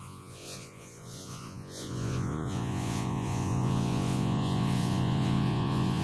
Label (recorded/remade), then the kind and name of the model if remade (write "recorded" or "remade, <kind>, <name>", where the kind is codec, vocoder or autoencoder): remade, vocoder, Vocos